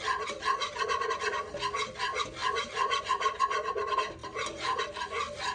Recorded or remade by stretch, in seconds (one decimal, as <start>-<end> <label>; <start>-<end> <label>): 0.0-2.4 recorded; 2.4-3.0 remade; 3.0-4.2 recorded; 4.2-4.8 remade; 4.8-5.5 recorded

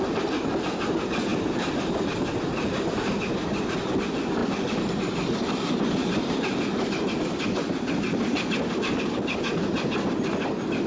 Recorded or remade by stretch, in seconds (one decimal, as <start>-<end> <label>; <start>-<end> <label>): 0.0-1.3 recorded; 1.3-3.8 remade; 3.8-4.4 recorded; 4.4-9.0 remade; 9.0-10.9 recorded

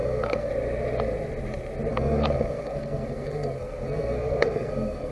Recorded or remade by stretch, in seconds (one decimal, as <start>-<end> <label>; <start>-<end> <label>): 0.0-0.5 remade; 0.5-1.9 recorded; 1.9-5.1 remade

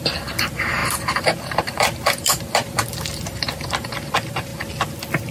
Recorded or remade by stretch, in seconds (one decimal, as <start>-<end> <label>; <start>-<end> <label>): 0.0-4.5 remade; 4.5-5.3 recorded

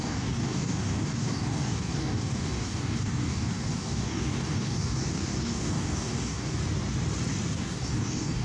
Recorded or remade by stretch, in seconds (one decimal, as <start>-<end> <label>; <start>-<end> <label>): 0.0-6.6 remade; 6.6-7.6 recorded; 7.6-8.4 remade